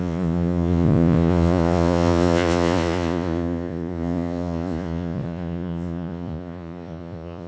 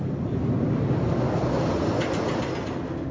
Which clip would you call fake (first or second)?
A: first